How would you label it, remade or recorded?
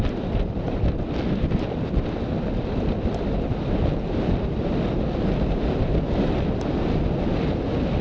recorded